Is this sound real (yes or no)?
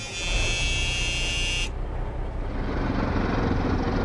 yes